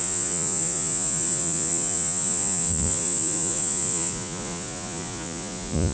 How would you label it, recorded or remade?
remade